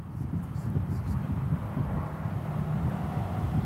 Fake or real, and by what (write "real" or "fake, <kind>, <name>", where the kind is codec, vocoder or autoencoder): fake, vocoder, BigVGAN v2